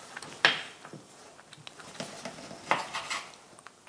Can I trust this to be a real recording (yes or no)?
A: yes